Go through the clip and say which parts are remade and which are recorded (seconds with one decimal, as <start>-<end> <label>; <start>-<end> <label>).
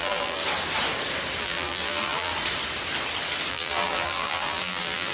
0.0-0.4 remade; 0.4-1.4 recorded; 1.4-2.3 remade; 2.3-3.5 recorded; 3.5-5.1 remade